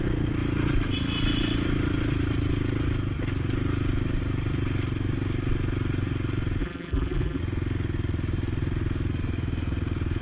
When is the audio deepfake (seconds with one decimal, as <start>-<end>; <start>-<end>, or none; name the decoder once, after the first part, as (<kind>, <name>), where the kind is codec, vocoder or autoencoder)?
6.6-7.4 (vocoder, BigVGAN v2)